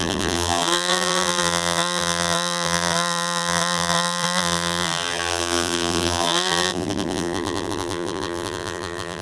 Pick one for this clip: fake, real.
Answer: fake